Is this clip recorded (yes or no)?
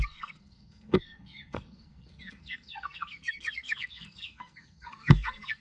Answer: no